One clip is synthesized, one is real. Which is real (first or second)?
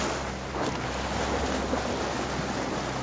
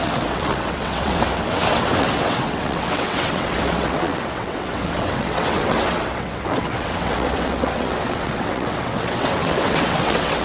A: first